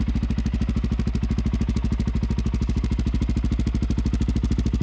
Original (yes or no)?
yes